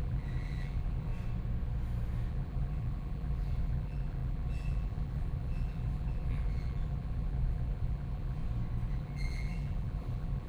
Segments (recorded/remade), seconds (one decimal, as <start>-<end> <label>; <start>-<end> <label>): 0.0-1.1 remade; 1.1-2.3 recorded; 2.3-8.4 remade; 8.4-8.9 recorded; 8.9-10.5 remade